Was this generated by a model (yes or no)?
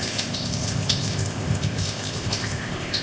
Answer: yes